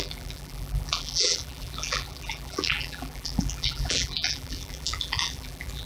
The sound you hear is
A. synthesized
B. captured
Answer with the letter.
A